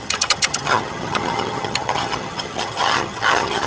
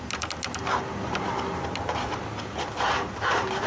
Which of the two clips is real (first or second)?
second